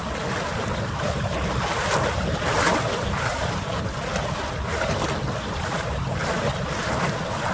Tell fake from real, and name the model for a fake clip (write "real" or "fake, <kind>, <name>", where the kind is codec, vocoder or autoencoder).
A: fake, vocoder, BigVGAN v2